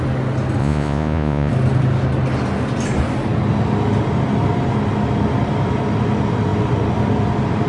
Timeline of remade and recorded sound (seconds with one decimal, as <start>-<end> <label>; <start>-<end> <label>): 0.0-0.6 recorded; 0.6-1.5 remade; 1.5-7.7 recorded